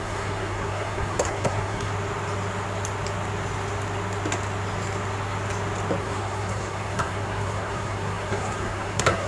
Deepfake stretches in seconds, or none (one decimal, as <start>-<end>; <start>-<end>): 0.0-1.9; 6.0-9.3